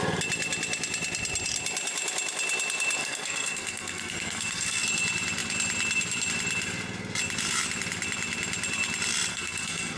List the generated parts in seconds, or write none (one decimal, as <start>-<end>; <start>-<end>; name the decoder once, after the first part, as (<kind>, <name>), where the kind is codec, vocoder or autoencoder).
3.0-4.8 (codec, SNAC); 9.3-10.0